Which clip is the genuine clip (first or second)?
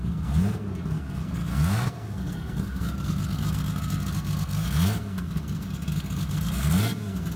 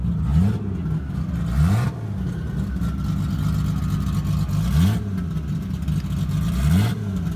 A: second